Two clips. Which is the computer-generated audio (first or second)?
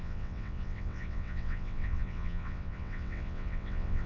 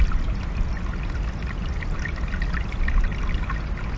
first